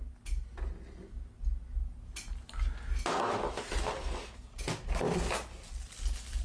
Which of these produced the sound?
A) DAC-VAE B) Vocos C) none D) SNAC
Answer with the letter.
C